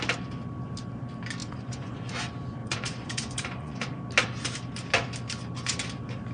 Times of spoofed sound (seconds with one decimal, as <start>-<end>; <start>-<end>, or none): 1.4-2.1; 2.6-4.0